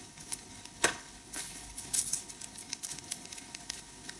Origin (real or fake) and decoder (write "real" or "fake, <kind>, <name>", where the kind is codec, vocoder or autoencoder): fake, codec, HILCodec